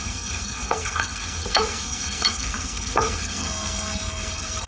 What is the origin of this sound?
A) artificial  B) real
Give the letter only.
A